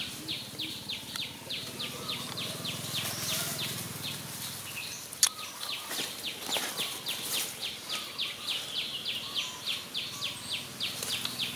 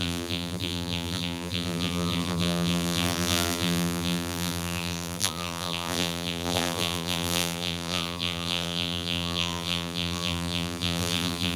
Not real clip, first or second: second